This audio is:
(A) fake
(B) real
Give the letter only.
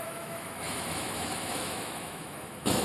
A